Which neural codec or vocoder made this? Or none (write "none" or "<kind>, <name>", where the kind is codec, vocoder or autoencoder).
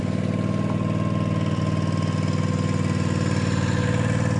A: none